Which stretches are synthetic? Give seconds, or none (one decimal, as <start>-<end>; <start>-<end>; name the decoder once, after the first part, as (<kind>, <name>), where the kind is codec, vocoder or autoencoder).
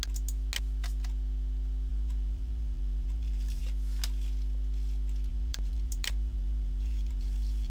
1.9-3.6 (vocoder, BigVGAN v2); 5.3-7.7